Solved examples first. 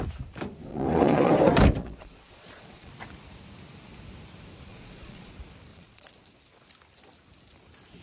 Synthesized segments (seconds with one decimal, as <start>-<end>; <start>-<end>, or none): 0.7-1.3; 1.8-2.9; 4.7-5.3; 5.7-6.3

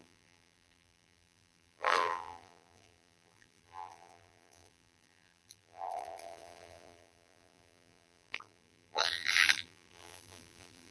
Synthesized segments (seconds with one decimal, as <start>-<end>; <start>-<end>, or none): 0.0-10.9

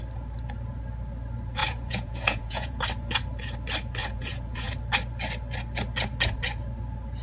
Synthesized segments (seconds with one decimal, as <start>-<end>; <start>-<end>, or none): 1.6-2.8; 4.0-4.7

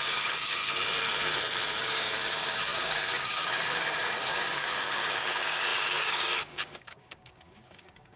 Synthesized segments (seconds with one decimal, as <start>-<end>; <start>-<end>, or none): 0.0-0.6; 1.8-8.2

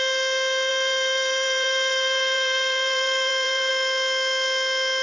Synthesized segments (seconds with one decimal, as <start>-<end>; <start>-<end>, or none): 0.7-3.7

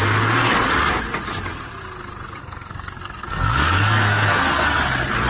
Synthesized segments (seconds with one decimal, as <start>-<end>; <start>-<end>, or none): 2.4-4.8